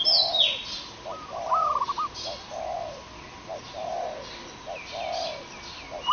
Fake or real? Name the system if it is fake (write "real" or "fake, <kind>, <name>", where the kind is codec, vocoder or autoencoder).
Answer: real